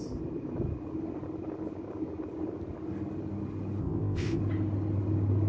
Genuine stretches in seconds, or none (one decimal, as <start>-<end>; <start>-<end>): 0.0-3.8; 4.4-5.5